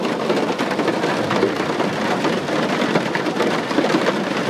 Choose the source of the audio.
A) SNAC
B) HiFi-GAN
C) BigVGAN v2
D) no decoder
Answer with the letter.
C